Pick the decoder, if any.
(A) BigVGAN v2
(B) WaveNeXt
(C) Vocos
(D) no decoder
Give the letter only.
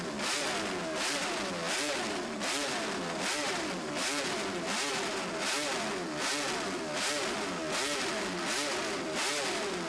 D